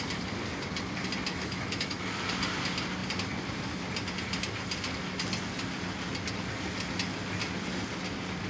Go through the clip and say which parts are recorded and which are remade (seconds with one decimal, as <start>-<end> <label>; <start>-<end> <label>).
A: 0.0-1.3 recorded; 1.3-2.1 remade; 2.1-8.5 recorded